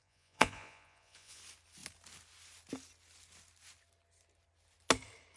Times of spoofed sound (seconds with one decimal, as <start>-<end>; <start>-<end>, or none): 0.0-1.4